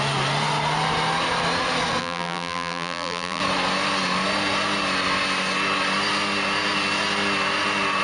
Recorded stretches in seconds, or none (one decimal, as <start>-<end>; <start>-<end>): 0.0-2.0; 3.4-8.0